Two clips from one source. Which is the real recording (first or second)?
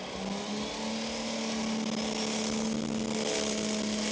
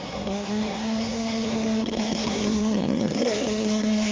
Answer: first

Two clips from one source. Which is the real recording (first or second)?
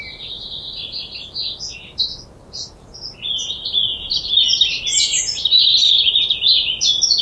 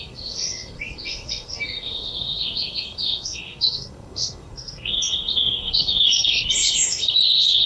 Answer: first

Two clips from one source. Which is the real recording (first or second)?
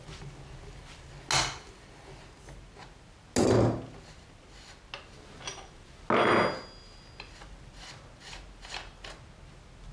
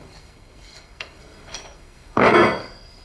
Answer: first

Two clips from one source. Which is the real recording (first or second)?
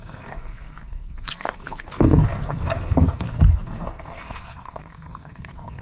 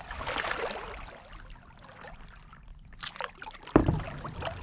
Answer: second